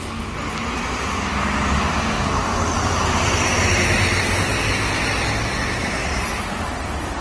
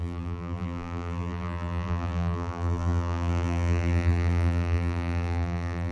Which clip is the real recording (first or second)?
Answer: first